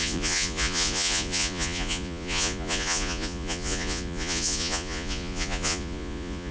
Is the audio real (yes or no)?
no